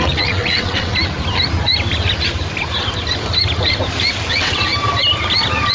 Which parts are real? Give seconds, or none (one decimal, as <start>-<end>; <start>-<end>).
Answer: 0.9-4.3; 4.7-5.7